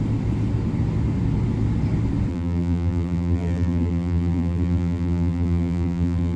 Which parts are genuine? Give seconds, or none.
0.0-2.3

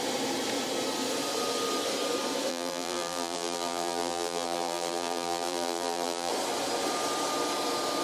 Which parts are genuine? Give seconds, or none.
0.0-2.5; 6.3-8.0

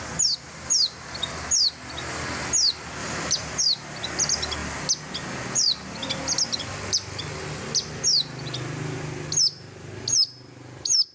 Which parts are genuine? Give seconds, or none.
0.0-3.0; 3.6-11.1